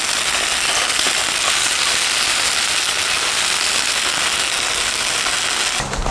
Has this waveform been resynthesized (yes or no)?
no